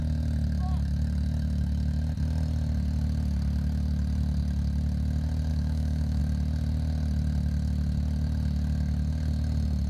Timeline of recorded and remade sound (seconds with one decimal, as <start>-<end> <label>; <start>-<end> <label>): 0.0-5.5 recorded; 5.5-6.2 remade; 6.2-9.9 recorded